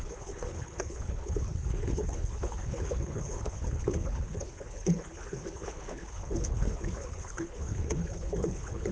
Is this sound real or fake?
fake